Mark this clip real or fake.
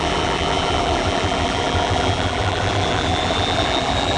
fake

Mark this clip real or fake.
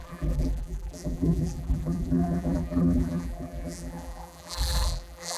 fake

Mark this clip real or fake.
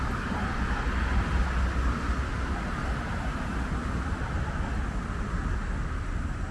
real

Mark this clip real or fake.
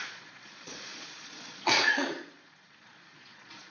fake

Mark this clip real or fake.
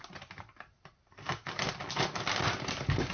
real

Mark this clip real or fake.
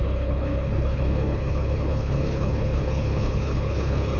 fake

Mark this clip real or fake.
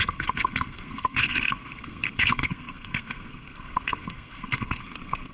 fake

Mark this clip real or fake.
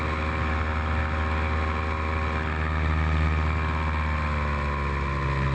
real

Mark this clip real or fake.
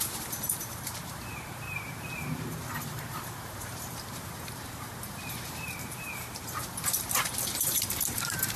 fake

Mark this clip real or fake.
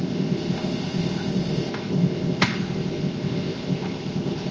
fake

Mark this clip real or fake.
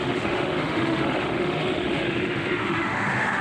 fake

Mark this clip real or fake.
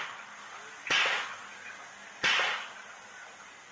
real